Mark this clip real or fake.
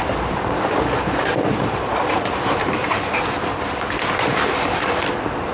fake